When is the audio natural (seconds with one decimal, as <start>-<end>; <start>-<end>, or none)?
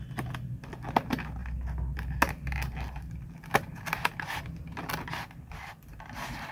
0.0-6.5